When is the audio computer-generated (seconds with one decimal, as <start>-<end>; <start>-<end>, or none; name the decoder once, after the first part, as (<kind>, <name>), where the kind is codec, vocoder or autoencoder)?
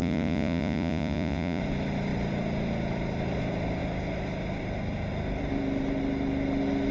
0.0-1.6 (vocoder, Vocos)